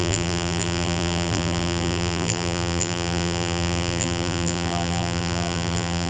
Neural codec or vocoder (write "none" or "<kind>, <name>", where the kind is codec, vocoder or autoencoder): vocoder, BigVGAN v2